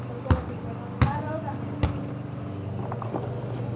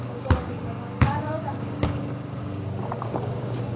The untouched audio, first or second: first